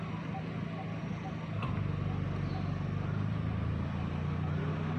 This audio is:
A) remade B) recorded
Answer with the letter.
B